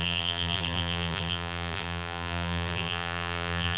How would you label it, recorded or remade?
remade